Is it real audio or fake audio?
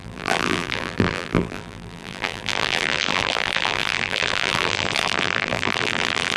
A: fake